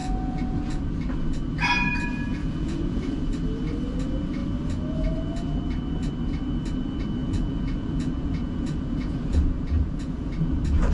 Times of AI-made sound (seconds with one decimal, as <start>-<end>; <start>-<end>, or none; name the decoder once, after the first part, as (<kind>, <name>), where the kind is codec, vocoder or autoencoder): 0.0-0.8 (vocoder, Vocos); 2.4-3.3; 7.2-10.3